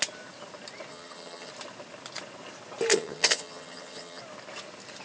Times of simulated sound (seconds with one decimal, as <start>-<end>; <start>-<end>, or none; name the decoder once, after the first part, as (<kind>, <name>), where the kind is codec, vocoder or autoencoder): 0.9-1.5 (vocoder, HiFi-GAN); 2.9-4.2